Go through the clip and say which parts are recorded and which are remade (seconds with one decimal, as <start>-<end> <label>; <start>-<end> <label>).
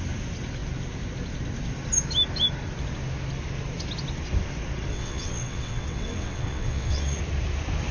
0.0-4.9 recorded; 4.9-7.2 remade; 7.2-7.9 recorded